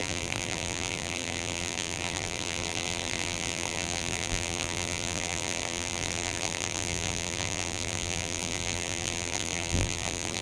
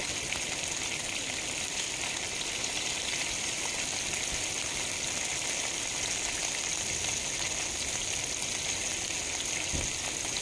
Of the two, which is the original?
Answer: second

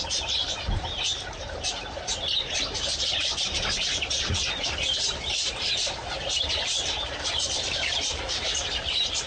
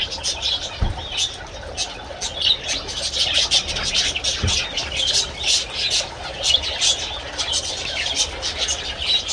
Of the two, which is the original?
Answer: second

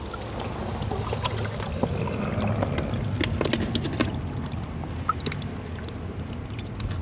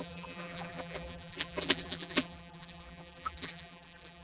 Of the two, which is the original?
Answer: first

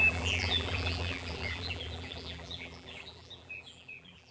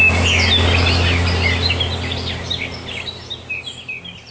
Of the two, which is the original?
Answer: second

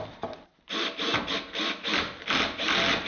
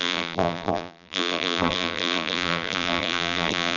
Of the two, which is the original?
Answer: first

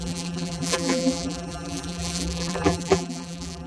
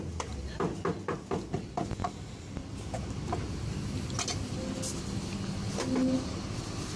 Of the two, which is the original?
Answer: second